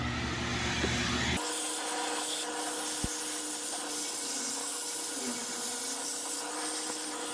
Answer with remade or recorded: recorded